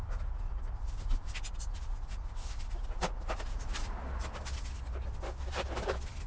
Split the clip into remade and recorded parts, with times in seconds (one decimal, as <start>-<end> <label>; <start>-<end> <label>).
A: 0.0-6.3 recorded

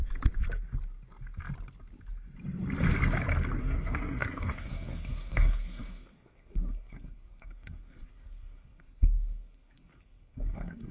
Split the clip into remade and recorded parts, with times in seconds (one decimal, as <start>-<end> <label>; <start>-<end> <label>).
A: 0.0-3.6 recorded; 3.6-10.9 remade

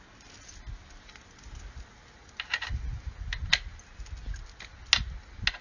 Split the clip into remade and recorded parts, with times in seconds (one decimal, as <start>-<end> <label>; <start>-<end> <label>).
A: 0.0-2.2 recorded; 2.2-3.5 remade; 3.5-5.6 recorded

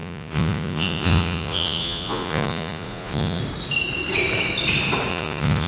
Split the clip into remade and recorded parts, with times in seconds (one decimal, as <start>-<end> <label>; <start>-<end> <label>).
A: 0.0-3.4 remade; 3.4-5.1 recorded; 5.1-5.7 remade

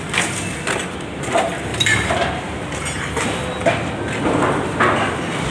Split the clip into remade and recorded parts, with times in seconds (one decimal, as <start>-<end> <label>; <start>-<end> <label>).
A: 0.0-5.5 recorded

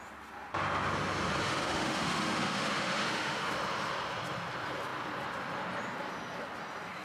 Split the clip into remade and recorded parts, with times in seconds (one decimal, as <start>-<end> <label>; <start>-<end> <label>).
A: 0.0-1.4 recorded; 1.4-3.5 remade; 3.5-7.0 recorded

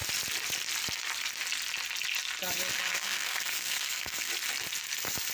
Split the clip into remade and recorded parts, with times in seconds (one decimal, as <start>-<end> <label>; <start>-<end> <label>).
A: 0.0-2.9 recorded; 2.9-4.3 remade; 4.3-5.3 recorded

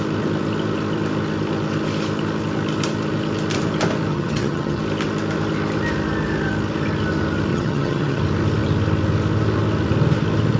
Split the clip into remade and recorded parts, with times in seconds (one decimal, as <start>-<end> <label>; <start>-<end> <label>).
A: 0.0-4.1 recorded; 4.1-4.8 remade; 4.8-7.5 recorded; 7.5-8.2 remade; 8.2-10.6 recorded